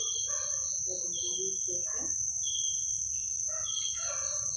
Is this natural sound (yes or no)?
yes